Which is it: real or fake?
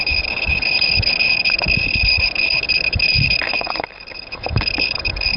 fake